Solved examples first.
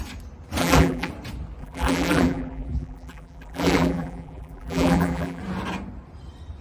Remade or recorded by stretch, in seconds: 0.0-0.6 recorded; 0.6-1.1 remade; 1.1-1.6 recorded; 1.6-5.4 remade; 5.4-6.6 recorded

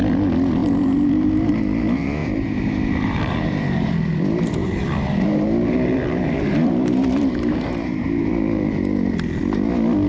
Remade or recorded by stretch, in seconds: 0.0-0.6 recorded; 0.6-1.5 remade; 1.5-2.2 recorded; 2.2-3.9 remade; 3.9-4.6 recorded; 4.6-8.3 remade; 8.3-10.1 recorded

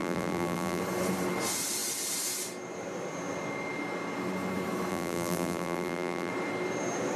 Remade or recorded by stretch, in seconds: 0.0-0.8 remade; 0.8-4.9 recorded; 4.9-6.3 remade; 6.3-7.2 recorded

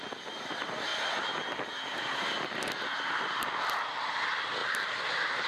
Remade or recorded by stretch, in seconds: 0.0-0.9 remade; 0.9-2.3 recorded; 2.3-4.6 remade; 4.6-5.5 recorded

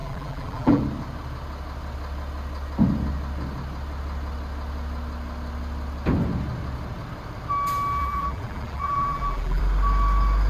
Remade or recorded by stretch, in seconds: 0.0-0.8 remade; 0.8-8.0 recorded; 8.0-9.6 remade; 9.6-10.5 recorded